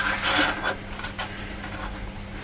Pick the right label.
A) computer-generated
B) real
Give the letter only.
A